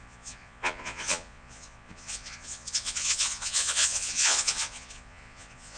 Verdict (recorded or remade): remade